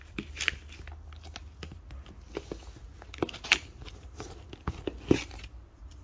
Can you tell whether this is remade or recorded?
recorded